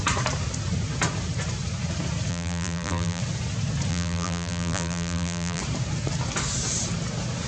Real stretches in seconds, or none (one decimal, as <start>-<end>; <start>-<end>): 0.0-2.3; 3.2-3.9; 5.6-7.5